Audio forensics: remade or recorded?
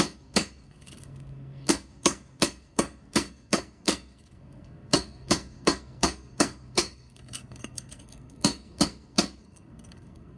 remade